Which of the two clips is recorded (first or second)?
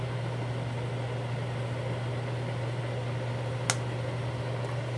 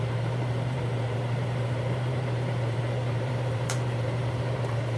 first